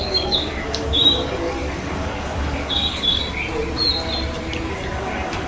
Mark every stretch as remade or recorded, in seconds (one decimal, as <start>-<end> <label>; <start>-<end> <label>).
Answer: 0.0-3.2 remade; 3.2-4.9 recorded; 4.9-5.5 remade